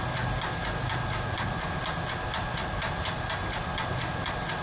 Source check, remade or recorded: recorded